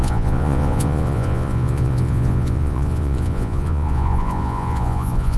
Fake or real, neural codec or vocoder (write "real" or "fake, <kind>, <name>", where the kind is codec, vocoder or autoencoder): fake, vocoder, Vocos